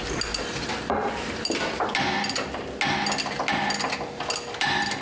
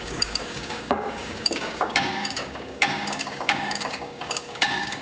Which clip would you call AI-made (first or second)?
second